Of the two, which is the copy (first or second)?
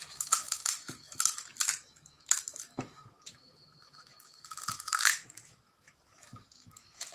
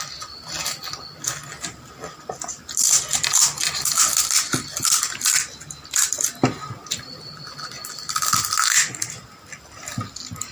first